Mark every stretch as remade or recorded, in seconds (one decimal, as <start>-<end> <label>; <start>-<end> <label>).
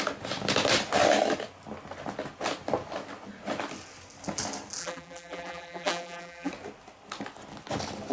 0.0-4.8 recorded; 4.8-6.5 remade; 6.5-8.1 recorded